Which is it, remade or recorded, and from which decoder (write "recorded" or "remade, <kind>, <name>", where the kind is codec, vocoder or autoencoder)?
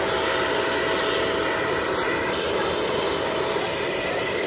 recorded